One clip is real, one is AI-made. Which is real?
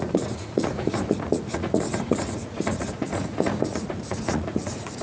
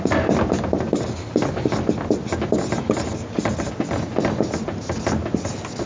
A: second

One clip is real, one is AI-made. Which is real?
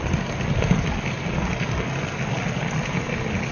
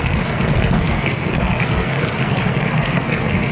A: first